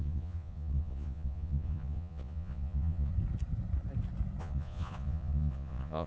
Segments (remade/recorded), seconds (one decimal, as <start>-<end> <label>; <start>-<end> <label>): 0.0-3.1 remade; 3.1-4.4 recorded; 4.4-6.1 remade